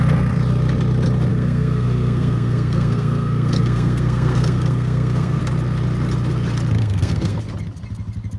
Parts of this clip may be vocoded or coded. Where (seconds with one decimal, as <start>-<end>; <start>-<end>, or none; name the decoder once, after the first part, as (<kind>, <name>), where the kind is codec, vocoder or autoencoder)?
1.3-5.4 (codec, SNAC); 6.8-7.4